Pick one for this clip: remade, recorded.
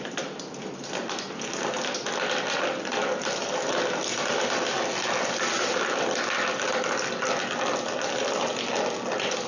recorded